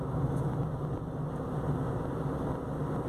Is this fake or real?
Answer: real